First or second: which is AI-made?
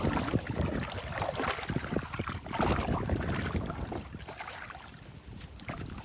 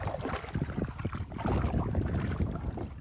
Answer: first